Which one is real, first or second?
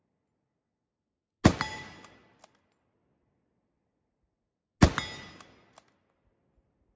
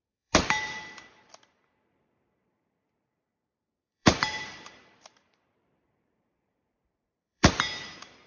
first